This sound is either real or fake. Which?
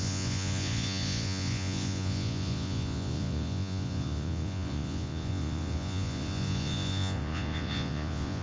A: fake